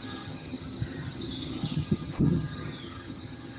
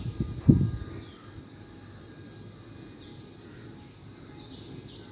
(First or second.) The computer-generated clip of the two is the first